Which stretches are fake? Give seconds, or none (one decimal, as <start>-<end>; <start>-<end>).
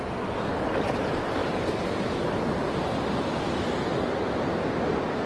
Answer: 1.4-2.5